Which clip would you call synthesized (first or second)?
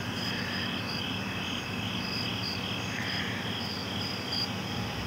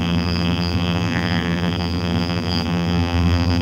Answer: second